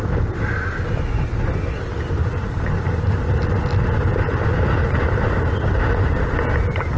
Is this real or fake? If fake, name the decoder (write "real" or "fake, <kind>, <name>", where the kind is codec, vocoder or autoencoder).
real